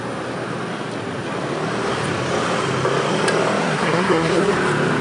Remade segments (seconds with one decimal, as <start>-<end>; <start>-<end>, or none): 3.6-4.5